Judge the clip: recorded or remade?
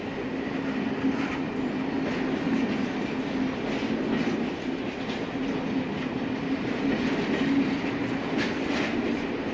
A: recorded